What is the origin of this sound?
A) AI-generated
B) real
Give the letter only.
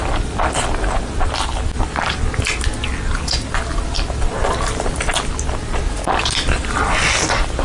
B